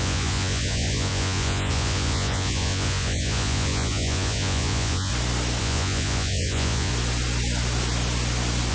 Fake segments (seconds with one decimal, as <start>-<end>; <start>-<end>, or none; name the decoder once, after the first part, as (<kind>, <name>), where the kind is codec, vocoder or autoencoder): 0.0-5.1 (vocoder, Vocos); 5.6-6.9